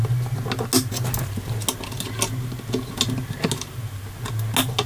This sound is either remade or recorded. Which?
recorded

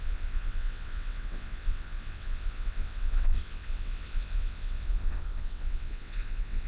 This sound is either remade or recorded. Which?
remade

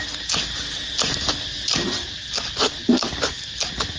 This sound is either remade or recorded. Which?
recorded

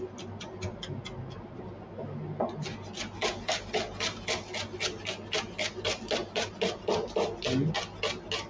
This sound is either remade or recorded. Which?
recorded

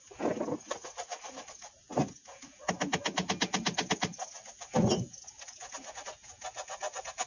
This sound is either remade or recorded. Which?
recorded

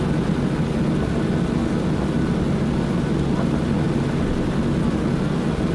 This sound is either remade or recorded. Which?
recorded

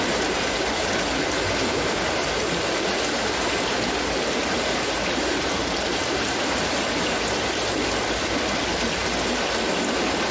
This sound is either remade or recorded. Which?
recorded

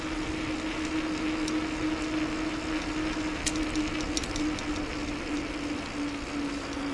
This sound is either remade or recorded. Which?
recorded